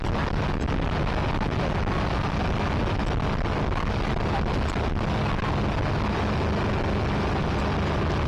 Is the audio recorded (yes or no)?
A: yes